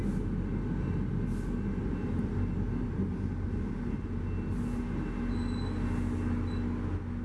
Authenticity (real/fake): real